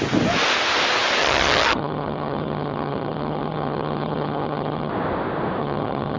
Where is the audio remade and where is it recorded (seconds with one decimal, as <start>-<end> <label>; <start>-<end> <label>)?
0.0-1.2 recorded; 1.2-4.9 remade; 4.9-5.6 recorded; 5.6-6.2 remade